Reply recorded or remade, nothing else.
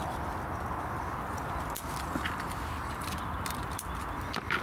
recorded